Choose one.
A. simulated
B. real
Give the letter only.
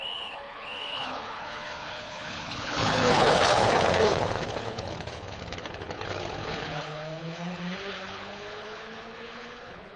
A